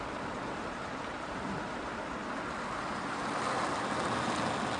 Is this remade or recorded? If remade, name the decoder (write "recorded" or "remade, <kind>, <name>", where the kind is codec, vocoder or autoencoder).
recorded